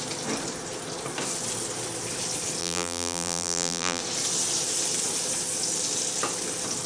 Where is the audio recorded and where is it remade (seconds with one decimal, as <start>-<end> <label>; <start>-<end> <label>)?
0.0-2.6 recorded; 2.6-4.0 remade; 4.0-6.9 recorded